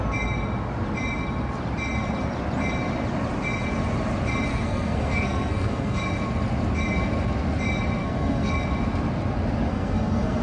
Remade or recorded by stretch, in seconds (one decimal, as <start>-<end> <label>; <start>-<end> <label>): 0.0-4.5 recorded; 4.5-6.0 remade; 6.0-8.0 recorded; 8.0-8.5 remade; 8.5-9.7 recorded; 9.7-10.4 remade